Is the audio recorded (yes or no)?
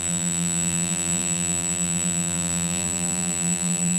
no